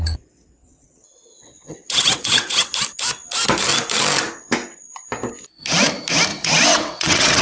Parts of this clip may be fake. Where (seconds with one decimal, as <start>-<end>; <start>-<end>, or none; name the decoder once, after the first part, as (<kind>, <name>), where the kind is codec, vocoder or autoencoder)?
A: 0.0-2.7 (vocoder, WaveNeXt); 6.3-7.4